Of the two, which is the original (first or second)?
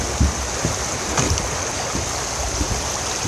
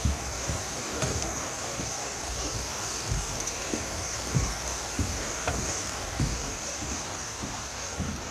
first